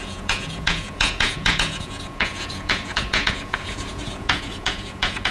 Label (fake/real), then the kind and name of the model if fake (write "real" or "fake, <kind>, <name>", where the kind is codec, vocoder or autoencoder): fake, vocoder, Vocos